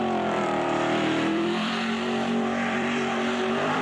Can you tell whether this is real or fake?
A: fake